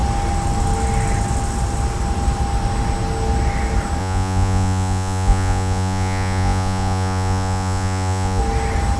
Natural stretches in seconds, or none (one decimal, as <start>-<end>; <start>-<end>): 0.0-4.0; 8.4-9.0